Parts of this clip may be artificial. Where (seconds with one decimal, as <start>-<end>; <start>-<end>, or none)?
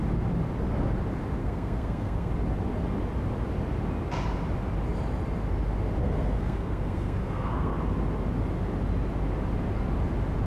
1.4-2.3; 6.0-7.8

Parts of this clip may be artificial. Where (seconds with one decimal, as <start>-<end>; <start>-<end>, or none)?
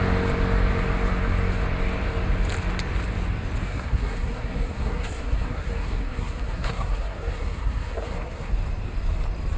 3.6-8.5